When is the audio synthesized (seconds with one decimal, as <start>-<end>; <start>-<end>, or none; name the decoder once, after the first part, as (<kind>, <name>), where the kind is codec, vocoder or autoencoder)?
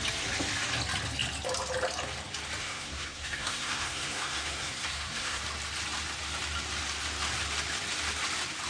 2.6-5.4 (codec, SNAC)